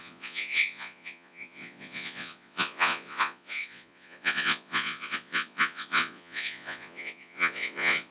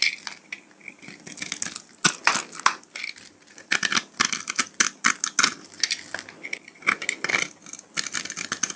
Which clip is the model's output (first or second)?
first